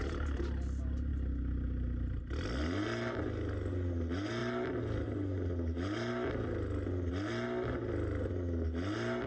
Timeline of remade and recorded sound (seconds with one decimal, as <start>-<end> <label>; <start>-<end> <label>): 0.0-9.3 recorded